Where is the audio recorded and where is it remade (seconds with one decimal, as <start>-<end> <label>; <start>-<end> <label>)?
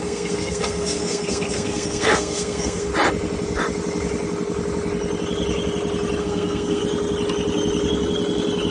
0.0-2.9 remade; 2.9-6.2 recorded; 6.2-6.8 remade; 6.8-8.7 recorded